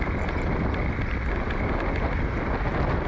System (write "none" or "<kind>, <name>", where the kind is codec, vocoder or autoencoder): none